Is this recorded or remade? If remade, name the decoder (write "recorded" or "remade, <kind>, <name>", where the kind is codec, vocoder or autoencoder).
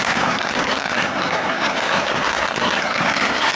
remade, codec, SNAC